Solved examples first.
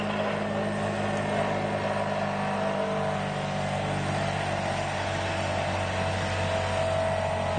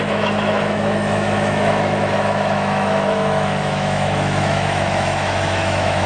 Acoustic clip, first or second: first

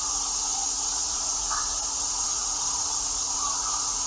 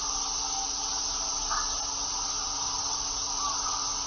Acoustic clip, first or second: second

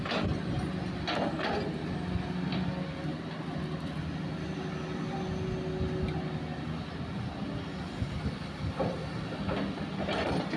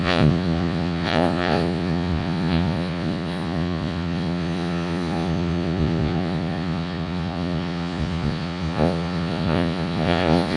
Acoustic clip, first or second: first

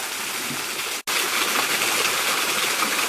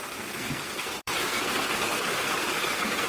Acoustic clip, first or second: first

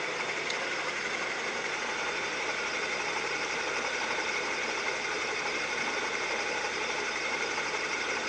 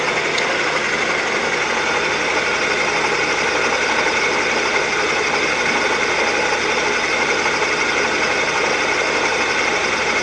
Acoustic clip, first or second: second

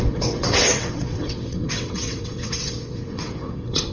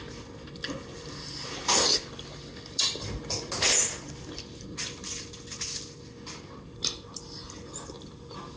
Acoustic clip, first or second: second